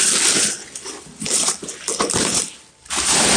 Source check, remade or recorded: recorded